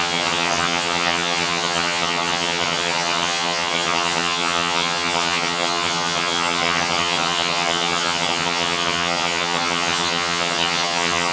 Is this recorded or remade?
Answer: remade